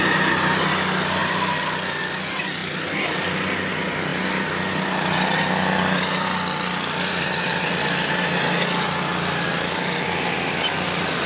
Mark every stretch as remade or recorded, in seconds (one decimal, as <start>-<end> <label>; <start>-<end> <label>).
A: 0.0-4.1 recorded; 4.1-7.7 remade; 7.7-11.3 recorded